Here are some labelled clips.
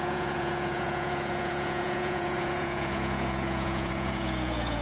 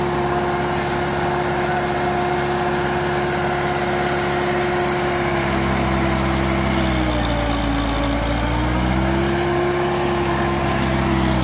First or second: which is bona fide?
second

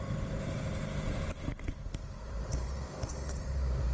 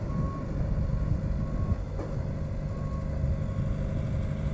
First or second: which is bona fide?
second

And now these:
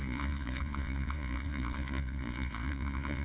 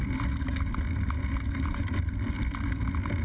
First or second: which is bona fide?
second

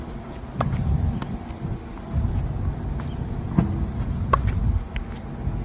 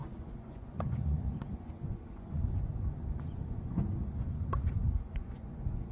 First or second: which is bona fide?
first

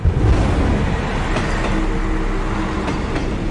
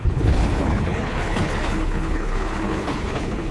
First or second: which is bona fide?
first